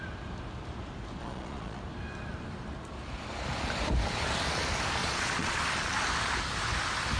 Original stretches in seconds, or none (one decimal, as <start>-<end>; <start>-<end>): 0.0-1.2; 1.8-5.0; 5.6-7.2